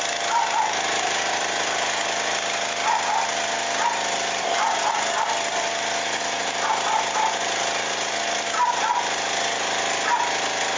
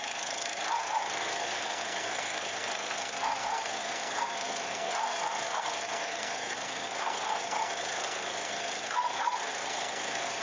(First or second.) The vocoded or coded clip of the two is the second